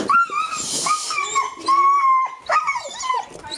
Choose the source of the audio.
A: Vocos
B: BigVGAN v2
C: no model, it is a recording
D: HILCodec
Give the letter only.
C